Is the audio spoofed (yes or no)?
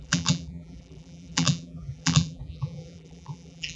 yes